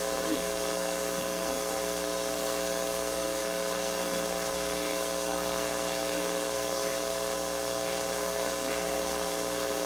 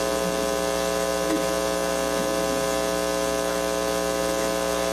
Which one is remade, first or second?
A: first